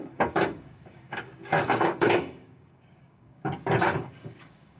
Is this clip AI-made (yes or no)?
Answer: yes